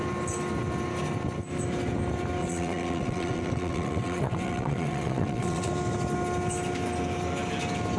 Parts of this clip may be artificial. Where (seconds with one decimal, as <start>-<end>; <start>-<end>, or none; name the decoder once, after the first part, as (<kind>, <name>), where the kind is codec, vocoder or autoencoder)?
2.4-5.7 (vocoder, WaveNeXt)